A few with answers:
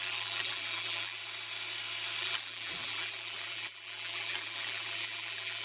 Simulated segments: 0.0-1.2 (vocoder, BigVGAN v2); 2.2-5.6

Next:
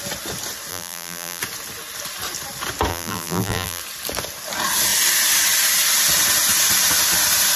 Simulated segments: 0.7-1.4 (vocoder, BigVGAN v2); 2.9-3.8